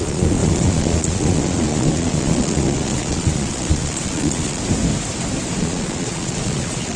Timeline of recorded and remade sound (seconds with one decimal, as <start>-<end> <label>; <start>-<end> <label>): 0.0-4.6 remade; 4.6-5.6 recorded; 5.6-7.0 remade